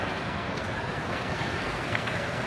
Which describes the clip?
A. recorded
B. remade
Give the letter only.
B